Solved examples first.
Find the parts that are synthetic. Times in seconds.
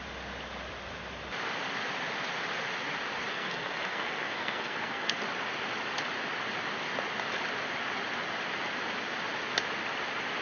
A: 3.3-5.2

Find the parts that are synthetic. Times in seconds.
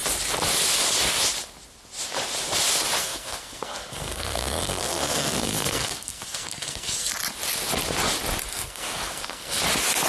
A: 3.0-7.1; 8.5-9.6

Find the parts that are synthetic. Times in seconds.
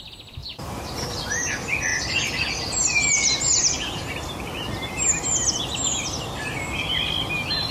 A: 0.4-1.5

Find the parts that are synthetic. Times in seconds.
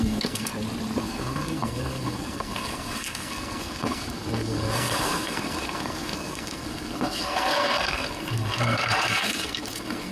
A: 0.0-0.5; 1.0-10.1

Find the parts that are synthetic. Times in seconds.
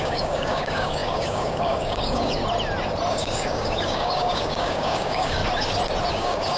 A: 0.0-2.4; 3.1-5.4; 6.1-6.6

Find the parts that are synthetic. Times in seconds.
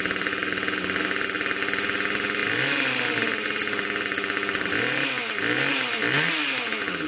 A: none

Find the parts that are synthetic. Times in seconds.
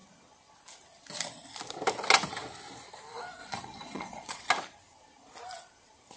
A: 3.4-4.5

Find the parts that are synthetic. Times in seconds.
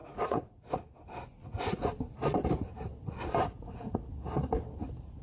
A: 0.0-0.7; 1.4-1.9; 3.4-4.1